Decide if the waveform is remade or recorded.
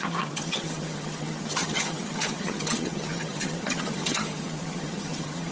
remade